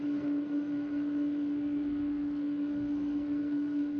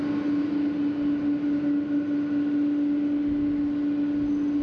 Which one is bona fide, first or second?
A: second